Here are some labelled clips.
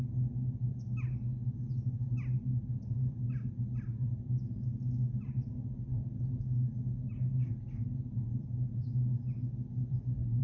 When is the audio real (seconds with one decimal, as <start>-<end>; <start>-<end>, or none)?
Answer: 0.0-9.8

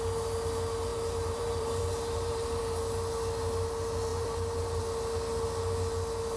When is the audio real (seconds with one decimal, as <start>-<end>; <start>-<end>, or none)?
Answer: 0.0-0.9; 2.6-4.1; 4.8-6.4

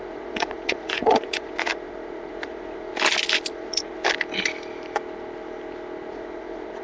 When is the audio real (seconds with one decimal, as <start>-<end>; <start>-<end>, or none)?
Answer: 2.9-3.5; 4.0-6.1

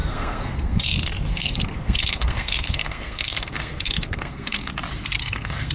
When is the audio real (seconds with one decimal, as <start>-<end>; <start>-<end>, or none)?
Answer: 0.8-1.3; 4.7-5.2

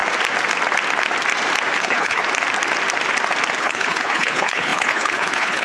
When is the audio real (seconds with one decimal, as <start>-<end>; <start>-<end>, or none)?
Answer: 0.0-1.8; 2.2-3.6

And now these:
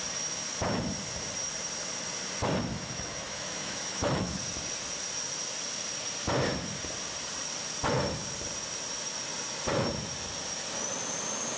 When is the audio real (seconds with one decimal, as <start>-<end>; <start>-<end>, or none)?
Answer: 0.0-2.7; 4.4-11.6

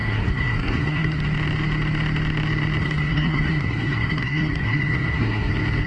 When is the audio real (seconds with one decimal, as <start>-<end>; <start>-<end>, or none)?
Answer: 1.2-2.8; 5.5-5.9

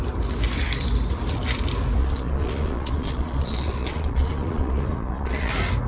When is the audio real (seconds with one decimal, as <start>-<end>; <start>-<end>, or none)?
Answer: 0.0-2.0; 5.5-5.9